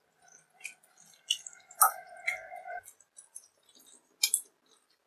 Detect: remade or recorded recorded